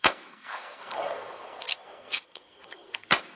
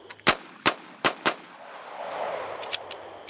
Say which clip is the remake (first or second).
first